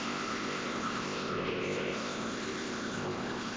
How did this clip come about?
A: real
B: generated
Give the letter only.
B